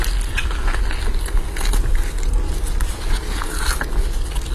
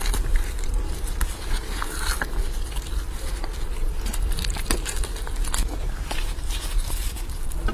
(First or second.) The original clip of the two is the first